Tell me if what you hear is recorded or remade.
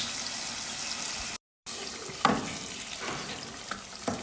recorded